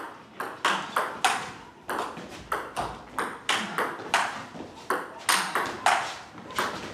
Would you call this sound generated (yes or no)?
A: no